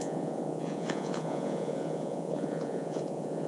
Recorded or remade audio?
remade